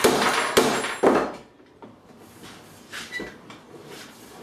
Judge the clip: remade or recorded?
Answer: recorded